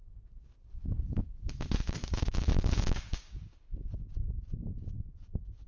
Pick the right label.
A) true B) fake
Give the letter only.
B